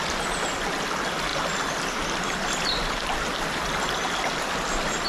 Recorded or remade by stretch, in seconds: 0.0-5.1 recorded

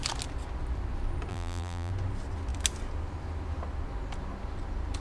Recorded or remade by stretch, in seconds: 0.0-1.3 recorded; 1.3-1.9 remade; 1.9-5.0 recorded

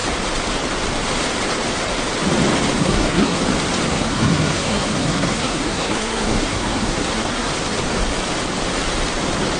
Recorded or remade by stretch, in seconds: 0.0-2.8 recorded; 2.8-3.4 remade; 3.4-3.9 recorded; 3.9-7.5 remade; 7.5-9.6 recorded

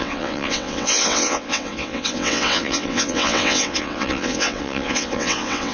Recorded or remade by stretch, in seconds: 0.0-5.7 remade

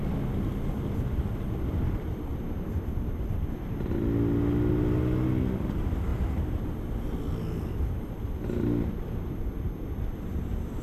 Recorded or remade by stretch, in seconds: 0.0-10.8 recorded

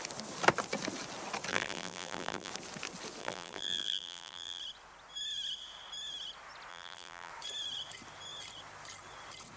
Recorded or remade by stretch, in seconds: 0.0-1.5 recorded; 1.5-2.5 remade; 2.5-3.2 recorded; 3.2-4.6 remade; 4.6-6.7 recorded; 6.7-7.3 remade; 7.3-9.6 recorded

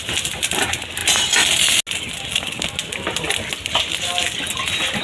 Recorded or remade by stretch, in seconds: 0.0-5.0 recorded

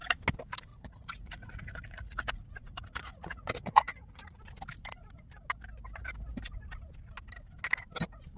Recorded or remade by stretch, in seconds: 0.0-0.7 recorded; 0.7-4.4 remade; 4.4-8.4 recorded